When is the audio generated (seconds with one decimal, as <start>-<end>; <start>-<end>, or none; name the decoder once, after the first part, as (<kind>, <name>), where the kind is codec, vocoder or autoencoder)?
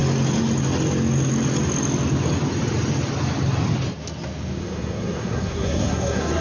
4.6-6.4 (codec, SNAC)